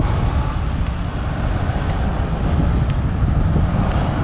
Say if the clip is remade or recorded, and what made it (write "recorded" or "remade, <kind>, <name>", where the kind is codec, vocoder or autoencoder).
recorded